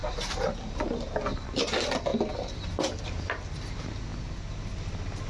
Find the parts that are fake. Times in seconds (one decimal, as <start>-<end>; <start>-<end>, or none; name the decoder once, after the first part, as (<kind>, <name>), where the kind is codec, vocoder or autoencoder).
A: 0.0-0.7 (vocoder, BigVGAN v2); 2.1-3.0